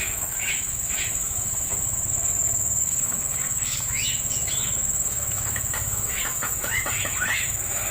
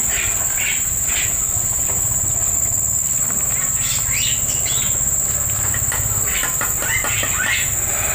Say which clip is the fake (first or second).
first